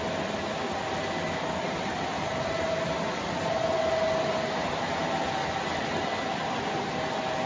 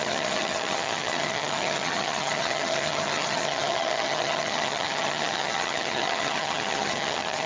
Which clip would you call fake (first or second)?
second